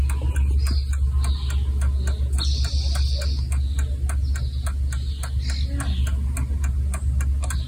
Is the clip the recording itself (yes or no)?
yes